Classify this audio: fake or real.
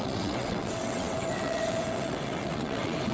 fake